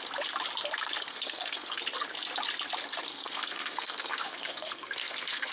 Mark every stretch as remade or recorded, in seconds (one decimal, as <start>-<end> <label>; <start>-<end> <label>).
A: 0.0-1.1 recorded; 1.1-1.8 remade; 1.8-3.1 recorded; 3.1-5.5 remade